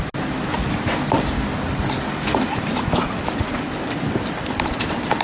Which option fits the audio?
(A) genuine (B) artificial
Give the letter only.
A